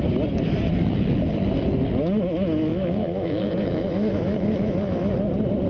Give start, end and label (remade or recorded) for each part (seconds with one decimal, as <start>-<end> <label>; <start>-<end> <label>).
0.0-2.7 recorded; 2.7-5.1 remade; 5.1-5.7 recorded